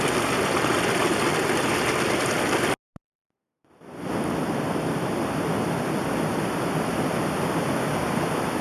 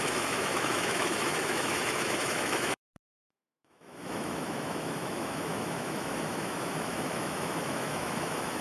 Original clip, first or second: first